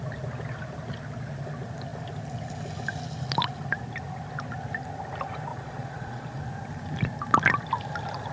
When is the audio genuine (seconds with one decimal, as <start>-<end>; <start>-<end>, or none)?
0.0-5.5; 6.4-8.3